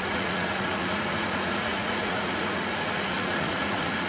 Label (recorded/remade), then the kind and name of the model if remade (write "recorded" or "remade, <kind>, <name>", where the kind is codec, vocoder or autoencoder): remade, vocoder, Vocos